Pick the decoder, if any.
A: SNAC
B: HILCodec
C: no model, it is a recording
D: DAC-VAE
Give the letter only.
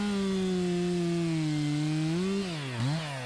C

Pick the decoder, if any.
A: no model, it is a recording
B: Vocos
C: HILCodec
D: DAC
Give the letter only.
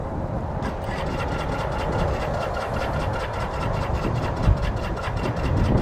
A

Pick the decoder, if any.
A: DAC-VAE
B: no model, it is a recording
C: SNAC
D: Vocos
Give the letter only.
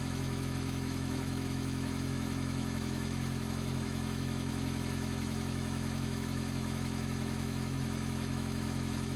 A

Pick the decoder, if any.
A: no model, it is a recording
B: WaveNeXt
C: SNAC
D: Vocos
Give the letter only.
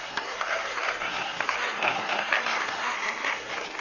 C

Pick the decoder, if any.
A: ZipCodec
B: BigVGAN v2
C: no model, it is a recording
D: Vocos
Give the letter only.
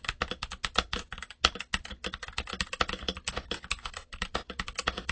C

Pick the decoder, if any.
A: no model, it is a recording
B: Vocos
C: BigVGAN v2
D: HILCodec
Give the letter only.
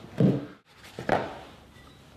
A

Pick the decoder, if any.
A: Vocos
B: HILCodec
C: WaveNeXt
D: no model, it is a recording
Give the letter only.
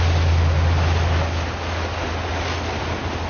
D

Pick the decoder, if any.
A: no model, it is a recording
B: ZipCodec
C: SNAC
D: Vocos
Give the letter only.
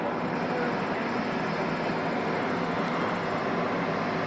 A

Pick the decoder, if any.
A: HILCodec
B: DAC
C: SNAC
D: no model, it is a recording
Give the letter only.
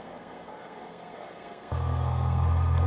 C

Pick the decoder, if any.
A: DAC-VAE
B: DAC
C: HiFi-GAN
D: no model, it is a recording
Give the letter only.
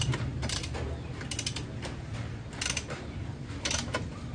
D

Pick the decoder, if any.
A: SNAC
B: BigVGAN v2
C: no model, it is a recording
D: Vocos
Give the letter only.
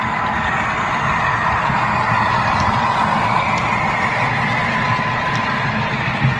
C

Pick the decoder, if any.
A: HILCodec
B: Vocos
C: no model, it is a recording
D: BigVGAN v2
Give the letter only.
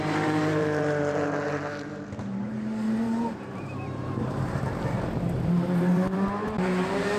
D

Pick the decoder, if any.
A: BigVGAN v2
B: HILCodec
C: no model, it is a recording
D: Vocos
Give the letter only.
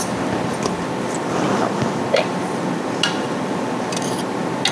C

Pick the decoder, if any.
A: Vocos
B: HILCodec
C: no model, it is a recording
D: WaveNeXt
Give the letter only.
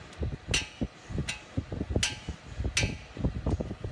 C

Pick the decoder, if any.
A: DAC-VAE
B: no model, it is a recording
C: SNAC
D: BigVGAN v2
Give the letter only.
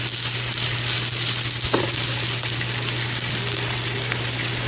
B